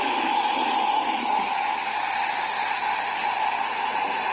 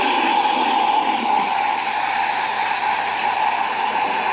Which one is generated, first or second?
first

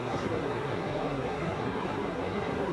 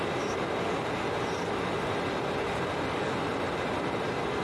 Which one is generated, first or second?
first